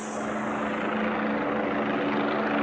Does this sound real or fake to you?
real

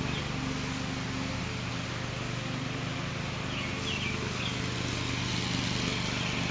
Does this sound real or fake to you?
real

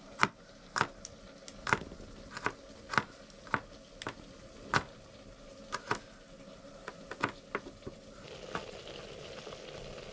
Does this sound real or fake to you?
real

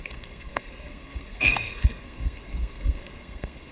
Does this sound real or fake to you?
fake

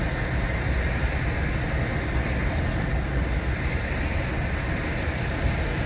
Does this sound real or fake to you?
real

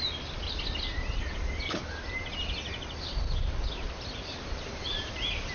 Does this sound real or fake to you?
real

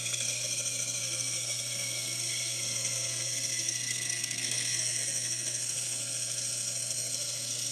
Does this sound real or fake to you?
fake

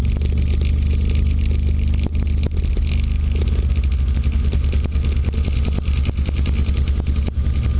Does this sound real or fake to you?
real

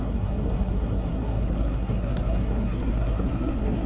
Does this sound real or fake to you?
fake